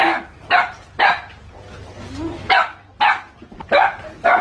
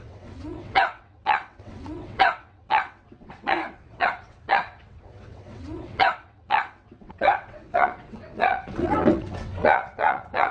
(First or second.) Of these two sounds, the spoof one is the second